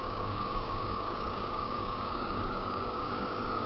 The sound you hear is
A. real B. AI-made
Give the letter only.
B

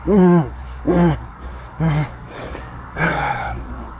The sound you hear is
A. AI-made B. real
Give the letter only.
A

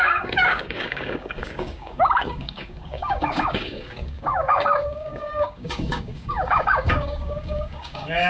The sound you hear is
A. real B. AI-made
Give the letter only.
B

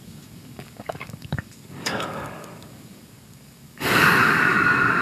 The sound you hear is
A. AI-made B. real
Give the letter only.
A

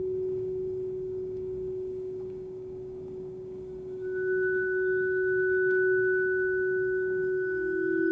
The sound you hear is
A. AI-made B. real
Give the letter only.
A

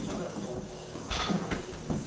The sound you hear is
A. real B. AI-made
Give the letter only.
B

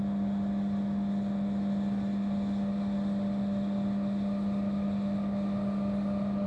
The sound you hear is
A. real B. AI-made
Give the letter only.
A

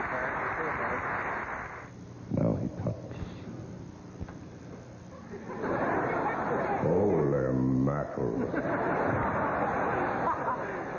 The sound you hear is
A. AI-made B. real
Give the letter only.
B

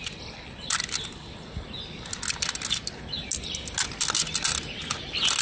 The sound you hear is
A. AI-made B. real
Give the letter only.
B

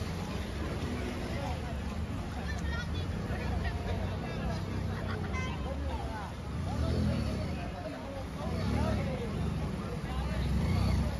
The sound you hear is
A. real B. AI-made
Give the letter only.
A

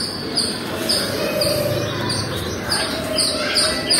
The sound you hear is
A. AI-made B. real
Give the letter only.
B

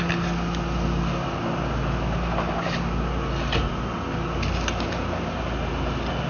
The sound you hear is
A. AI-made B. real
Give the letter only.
B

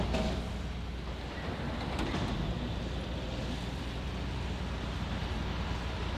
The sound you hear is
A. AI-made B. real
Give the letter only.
B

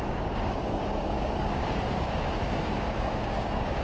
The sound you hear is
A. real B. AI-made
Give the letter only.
B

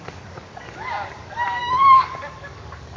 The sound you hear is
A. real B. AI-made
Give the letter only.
B